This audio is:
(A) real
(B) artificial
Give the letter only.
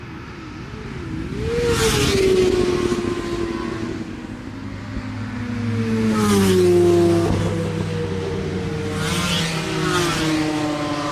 A